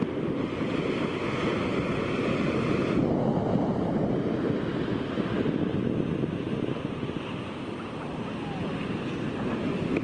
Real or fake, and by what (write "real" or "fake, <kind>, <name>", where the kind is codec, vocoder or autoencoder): real